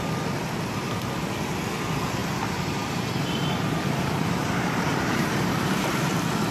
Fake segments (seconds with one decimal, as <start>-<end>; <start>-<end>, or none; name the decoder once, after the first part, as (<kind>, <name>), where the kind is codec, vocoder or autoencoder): 2.2-6.1 (vocoder, BigVGAN v2)